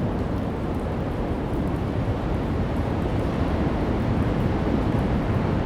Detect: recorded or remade remade